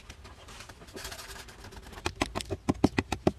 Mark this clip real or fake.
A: real